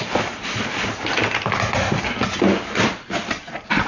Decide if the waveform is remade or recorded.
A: recorded